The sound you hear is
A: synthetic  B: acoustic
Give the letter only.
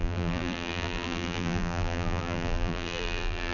A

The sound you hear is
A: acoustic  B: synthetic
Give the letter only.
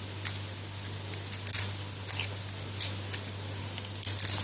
A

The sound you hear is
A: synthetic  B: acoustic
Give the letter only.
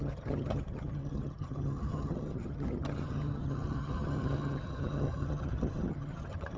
A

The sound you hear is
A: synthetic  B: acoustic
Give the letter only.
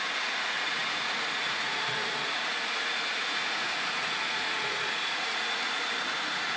A